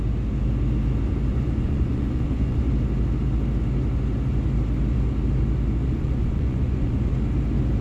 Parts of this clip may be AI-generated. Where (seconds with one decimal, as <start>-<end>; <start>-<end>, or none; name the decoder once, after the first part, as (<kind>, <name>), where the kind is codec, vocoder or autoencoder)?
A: 1.3-2.7 (vocoder, Vocos); 5.8-7.1